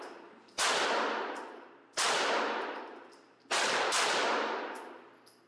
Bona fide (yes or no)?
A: yes